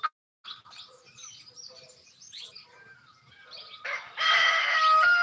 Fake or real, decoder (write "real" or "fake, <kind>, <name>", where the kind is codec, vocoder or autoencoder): real